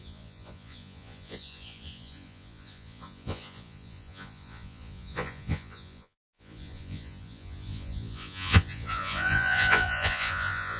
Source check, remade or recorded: remade